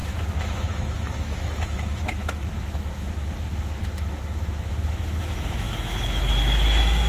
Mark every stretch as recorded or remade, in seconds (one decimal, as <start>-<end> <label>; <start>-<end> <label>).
0.0-7.1 remade